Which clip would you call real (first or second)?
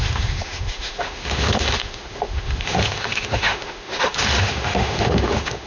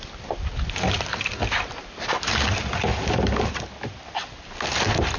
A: second